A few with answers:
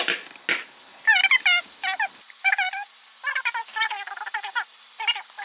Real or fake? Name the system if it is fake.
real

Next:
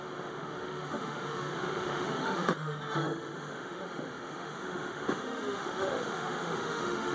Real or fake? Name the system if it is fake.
fake, autoencoder, DAC-VAE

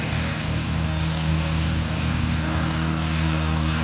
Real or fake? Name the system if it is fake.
fake, codec, DAC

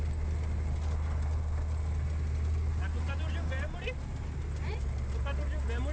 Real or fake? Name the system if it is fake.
real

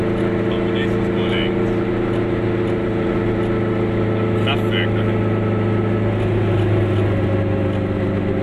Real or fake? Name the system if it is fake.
real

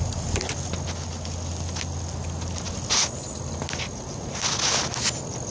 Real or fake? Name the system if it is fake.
real